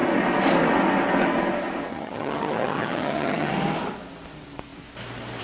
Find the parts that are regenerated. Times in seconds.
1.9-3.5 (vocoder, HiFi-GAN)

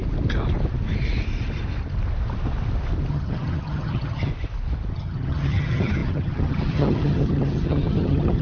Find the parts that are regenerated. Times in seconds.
3.1-4.3 (vocoder, HiFi-GAN); 4.9-8.4

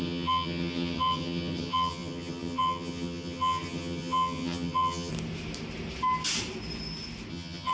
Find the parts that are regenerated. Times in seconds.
0.0-5.1 (vocoder, HiFi-GAN); 7.3-7.7